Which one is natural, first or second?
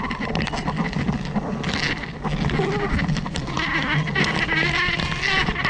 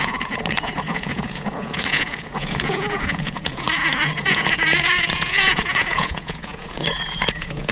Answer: first